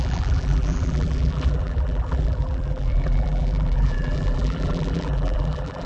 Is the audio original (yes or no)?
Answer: no